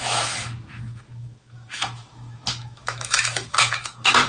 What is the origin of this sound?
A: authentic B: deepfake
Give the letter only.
B